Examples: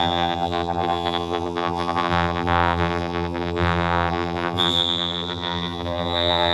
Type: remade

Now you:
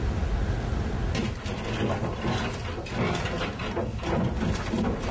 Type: recorded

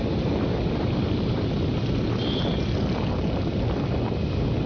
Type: recorded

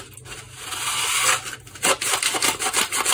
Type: recorded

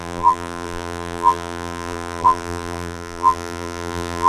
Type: remade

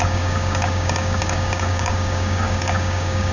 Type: remade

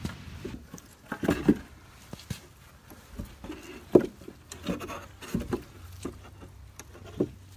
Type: recorded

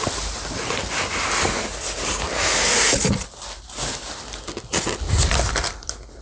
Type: recorded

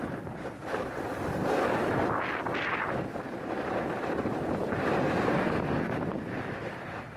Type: recorded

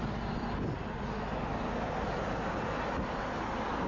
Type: recorded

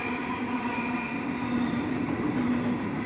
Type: recorded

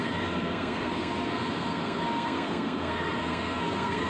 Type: remade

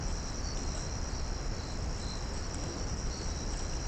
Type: remade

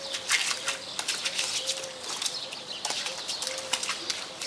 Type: recorded